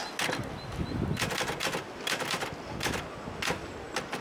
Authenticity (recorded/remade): recorded